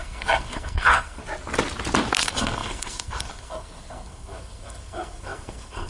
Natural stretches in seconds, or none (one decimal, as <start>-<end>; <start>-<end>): 1.2-2.2